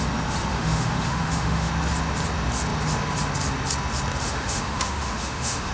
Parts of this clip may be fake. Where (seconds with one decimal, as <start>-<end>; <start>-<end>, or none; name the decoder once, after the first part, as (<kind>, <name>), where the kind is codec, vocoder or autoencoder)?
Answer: 0.5-1.7 (autoencoder, DAC-VAE); 4.2-5.7